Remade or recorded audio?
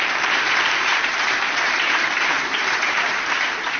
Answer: remade